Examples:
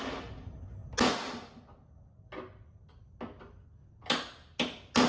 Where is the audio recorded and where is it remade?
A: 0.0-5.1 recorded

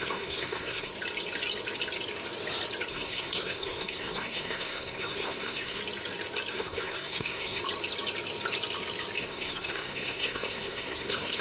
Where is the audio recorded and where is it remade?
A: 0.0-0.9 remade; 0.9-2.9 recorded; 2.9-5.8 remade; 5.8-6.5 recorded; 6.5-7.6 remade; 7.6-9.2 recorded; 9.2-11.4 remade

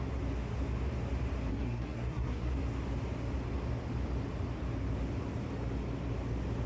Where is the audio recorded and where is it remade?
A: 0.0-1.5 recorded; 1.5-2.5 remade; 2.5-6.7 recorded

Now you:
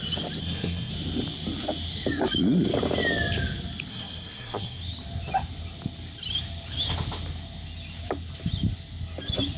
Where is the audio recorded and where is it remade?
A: 0.0-0.4 recorded; 0.4-0.9 remade; 0.9-3.9 recorded; 3.9-4.8 remade; 4.8-9.6 recorded

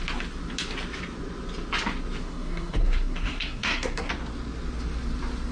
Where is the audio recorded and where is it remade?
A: 0.0-2.2 recorded; 2.2-4.1 remade; 4.1-5.5 recorded

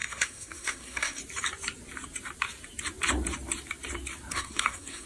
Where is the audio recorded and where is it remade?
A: 0.0-1.2 remade; 1.2-4.3 recorded; 4.3-5.1 remade

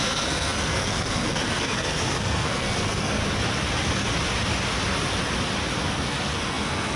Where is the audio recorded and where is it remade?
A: 0.0-3.2 remade; 3.2-5.9 recorded; 5.9-7.0 remade

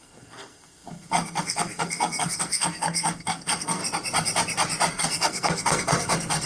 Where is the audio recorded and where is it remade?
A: 0.0-3.8 remade; 3.8-4.9 recorded; 4.9-6.5 remade